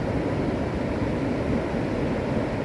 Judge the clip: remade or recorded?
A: recorded